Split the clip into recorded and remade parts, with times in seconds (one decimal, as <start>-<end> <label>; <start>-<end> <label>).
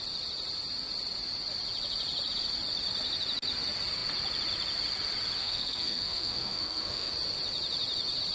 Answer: 0.0-5.4 recorded; 5.4-7.1 remade; 7.1-8.3 recorded